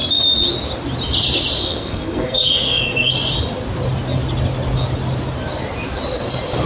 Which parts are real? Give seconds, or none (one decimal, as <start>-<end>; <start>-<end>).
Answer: 0.0-1.6; 3.1-6.7